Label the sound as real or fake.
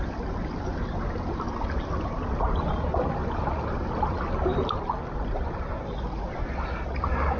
real